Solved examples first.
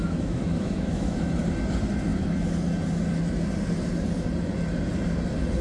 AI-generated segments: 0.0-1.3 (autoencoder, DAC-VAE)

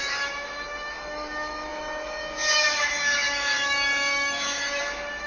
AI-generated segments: 0.0-5.3 (autoencoder, DAC-VAE)

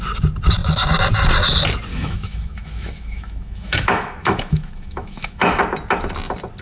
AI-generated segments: 1.9-5.6 (autoencoder, DAC-VAE)

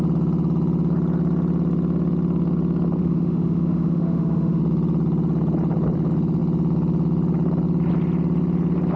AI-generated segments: 3.0-4.6 (autoencoder, DAC-VAE)

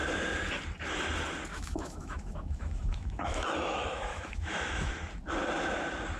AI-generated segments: 1.5-4.9 (autoencoder, DAC-VAE)

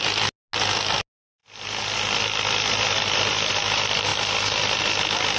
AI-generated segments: none

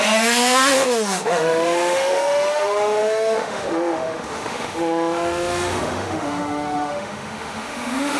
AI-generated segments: 0.0-8.2 (autoencoder, DAC-VAE)